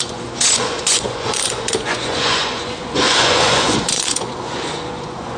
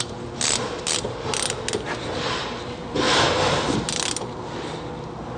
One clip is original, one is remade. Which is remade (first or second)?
first